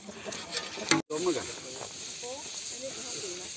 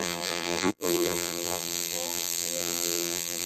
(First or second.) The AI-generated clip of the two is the second